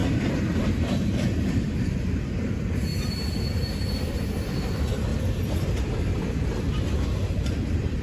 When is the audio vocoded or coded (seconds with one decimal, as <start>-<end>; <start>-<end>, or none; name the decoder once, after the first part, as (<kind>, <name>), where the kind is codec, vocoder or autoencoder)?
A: 0.0-5.1 (vocoder, BigVGAN v2); 5.7-8.0